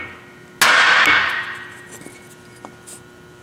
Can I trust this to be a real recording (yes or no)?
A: yes